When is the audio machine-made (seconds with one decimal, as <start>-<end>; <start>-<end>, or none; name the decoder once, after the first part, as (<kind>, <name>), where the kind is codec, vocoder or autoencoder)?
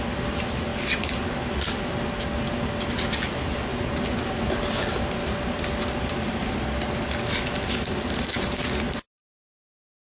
none